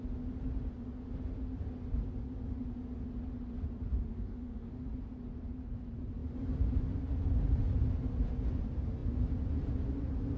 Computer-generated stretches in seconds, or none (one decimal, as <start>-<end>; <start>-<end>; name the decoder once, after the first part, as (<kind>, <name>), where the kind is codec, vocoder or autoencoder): 4.1-4.7 (autoencoder, DAC-VAE)